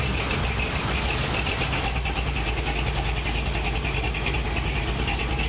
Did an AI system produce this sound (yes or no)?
no